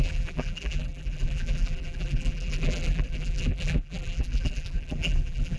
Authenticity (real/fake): fake